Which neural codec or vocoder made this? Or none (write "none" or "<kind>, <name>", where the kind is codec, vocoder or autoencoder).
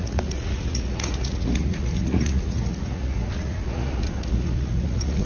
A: vocoder, Vocos